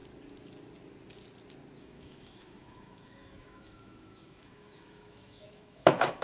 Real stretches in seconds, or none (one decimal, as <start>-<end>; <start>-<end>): 0.0-1.8